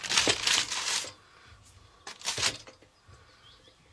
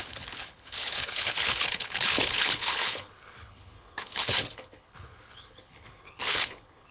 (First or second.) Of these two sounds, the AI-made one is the second